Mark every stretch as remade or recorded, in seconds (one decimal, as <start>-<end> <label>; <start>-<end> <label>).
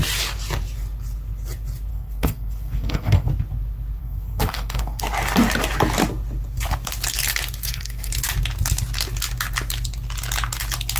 0.0-1.9 recorded; 1.9-3.3 remade; 3.3-4.0 recorded; 4.0-5.0 remade; 5.0-7.6 recorded; 7.6-8.1 remade; 8.1-11.0 recorded